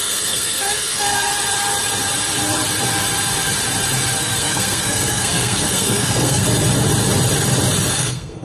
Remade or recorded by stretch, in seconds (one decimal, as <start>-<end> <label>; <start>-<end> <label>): 0.0-1.3 remade; 1.3-4.2 recorded; 4.2-6.4 remade; 6.4-7.9 recorded; 7.9-8.4 remade